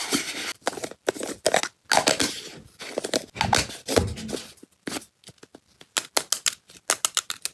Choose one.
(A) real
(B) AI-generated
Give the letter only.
A